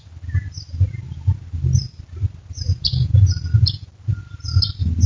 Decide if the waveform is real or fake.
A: real